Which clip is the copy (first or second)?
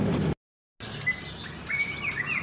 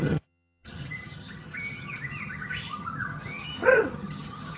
second